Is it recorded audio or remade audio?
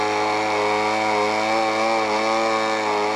recorded